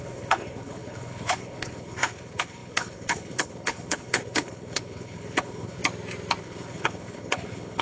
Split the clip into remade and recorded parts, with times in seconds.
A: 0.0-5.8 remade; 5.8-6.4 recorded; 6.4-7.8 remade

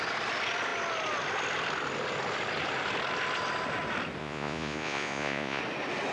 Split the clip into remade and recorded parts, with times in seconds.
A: 0.0-4.2 recorded; 4.2-5.6 remade; 5.6-6.1 recorded

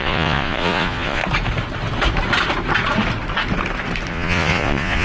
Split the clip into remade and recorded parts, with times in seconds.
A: 0.0-1.2 remade; 1.2-4.1 recorded; 4.1-5.0 remade

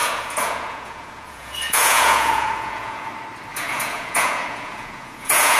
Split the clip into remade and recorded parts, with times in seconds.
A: 0.0-3.1 remade; 3.1-3.5 recorded; 3.5-5.6 remade